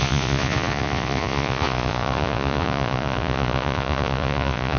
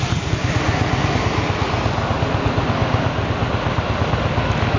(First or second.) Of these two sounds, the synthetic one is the first